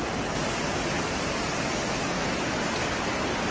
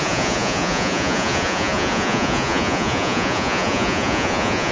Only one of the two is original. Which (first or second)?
first